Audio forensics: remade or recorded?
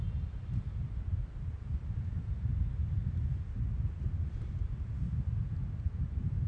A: recorded